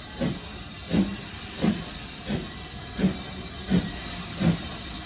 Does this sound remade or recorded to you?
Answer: recorded